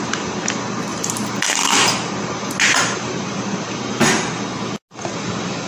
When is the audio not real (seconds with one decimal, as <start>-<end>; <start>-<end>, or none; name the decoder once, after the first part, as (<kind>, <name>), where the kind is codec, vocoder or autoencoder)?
0.9-4.3 (vocoder, BigVGAN v2)